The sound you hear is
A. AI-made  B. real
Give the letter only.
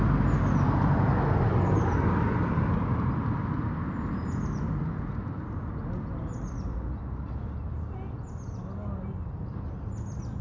B